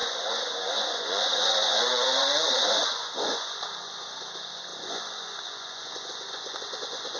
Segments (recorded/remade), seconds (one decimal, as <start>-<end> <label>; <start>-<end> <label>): 0.0-7.2 remade